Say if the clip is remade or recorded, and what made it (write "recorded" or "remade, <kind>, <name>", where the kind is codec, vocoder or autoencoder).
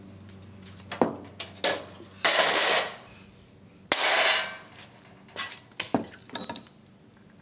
recorded